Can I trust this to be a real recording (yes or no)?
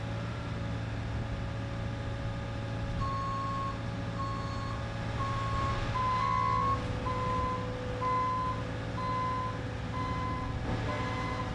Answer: yes